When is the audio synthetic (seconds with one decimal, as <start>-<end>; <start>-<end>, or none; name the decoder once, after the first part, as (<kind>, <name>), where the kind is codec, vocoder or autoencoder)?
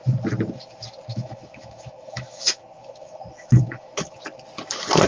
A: 1.1-4.2 (autoencoder, DAC-VAE)